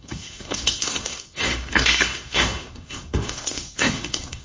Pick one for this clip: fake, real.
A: fake